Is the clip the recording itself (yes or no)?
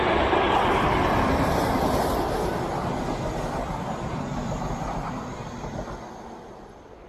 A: yes